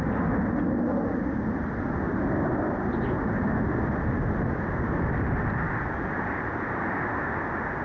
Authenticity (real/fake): real